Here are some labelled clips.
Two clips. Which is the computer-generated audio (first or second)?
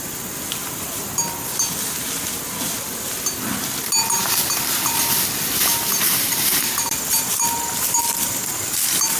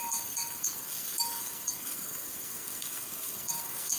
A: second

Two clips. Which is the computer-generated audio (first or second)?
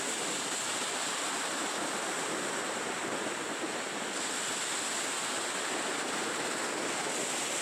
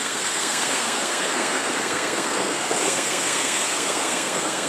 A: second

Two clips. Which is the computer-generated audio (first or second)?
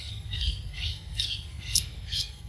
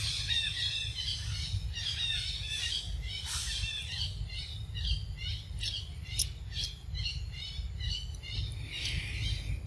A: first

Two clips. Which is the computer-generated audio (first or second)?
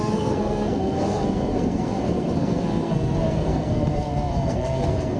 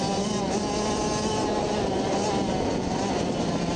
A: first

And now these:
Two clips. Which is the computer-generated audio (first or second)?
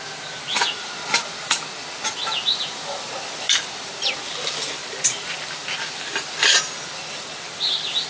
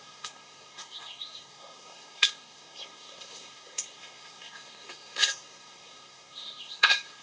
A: second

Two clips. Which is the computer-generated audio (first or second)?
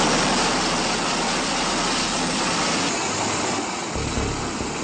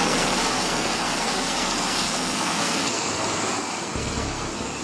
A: second